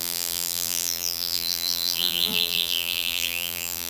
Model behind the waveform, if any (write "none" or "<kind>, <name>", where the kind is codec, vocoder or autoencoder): vocoder, BigVGAN v2